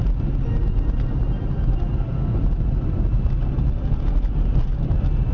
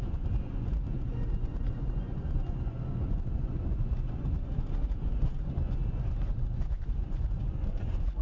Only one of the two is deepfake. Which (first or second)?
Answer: second